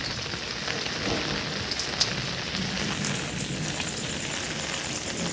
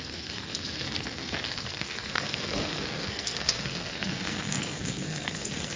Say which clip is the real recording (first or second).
first